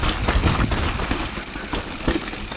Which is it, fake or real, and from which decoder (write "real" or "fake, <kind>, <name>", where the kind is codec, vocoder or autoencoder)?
real